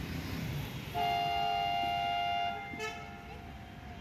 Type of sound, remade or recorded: recorded